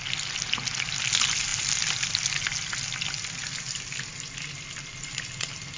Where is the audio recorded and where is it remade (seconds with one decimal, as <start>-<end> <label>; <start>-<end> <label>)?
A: 0.0-5.8 recorded